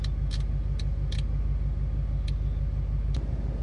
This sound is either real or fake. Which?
real